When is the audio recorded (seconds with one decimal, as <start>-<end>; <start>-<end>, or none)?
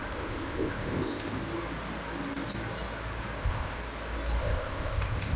1.4-3.4; 3.8-4.4